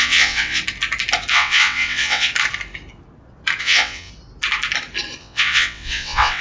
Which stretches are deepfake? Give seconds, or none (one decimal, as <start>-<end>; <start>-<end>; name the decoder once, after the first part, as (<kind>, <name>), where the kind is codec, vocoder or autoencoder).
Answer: 0.0-0.6 (vocoder, WaveNeXt); 1.3-2.3; 3.6-4.1; 5.2-6.4

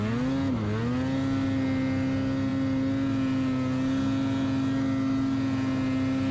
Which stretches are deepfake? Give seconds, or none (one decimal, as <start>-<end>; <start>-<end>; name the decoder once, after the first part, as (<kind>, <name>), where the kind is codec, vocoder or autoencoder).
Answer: none

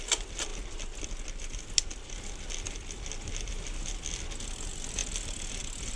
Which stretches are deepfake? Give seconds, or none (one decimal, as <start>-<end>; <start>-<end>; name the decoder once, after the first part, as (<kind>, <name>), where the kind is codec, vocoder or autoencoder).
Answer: none